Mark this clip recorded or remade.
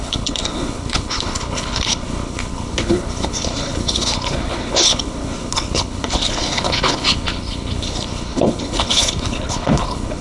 remade